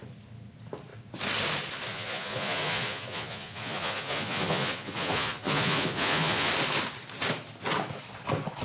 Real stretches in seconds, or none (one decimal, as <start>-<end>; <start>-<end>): 0.0-1.9; 6.5-8.6